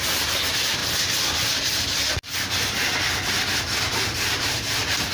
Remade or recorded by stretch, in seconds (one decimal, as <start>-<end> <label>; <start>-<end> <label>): 0.0-0.8 remade; 0.8-3.6 recorded; 3.6-5.1 remade